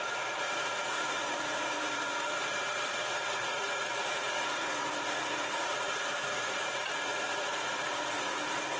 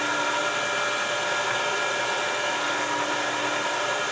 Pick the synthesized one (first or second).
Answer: first